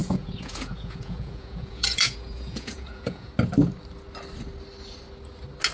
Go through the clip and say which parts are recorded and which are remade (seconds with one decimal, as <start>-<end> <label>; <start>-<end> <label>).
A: 0.0-3.3 remade; 3.3-5.7 recorded